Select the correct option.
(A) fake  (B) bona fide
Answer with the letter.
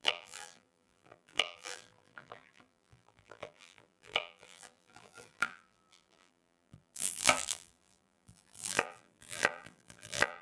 A